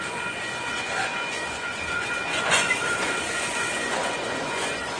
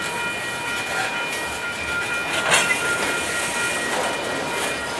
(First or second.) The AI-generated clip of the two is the first